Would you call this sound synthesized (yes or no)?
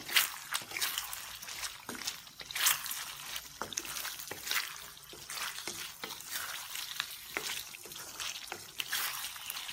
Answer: no